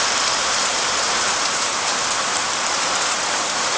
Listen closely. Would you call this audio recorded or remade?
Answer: remade